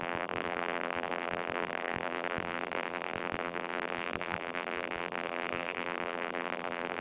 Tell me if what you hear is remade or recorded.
remade